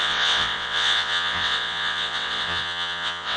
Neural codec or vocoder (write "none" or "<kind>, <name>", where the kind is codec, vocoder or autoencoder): vocoder, WaveNeXt